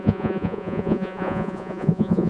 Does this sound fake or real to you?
fake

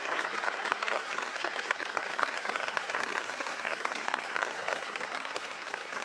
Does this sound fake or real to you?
fake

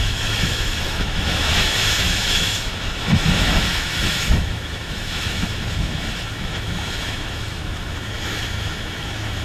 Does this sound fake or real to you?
fake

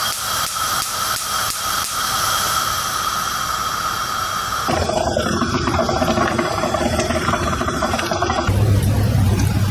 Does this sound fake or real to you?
fake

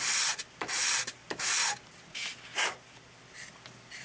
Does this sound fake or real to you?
real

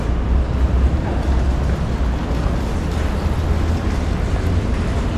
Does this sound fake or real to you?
real